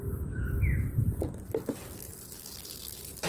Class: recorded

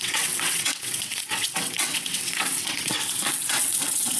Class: remade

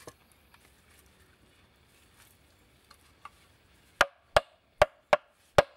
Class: recorded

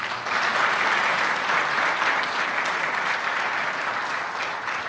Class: recorded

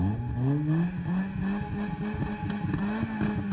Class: recorded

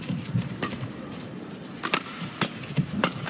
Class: remade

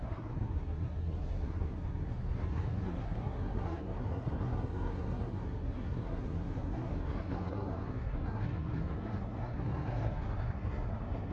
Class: remade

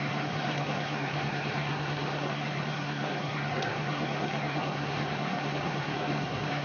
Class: remade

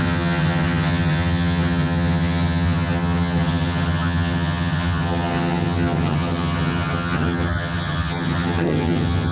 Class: remade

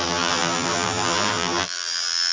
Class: remade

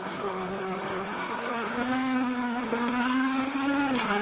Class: remade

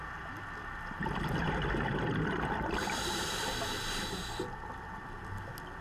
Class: recorded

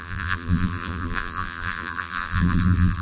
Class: remade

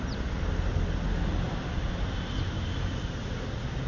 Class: recorded